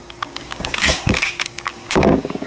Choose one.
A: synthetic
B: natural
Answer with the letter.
A